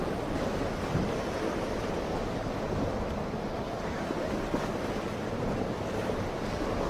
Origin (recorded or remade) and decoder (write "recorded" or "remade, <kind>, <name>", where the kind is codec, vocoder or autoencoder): recorded